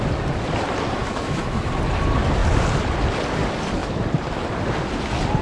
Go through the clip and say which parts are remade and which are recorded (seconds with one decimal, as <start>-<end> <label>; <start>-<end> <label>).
0.0-1.0 recorded; 1.0-1.7 remade; 1.7-5.4 recorded